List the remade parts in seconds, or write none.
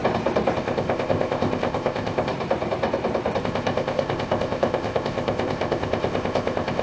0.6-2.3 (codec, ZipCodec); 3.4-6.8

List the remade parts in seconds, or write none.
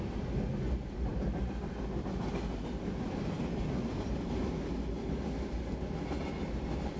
none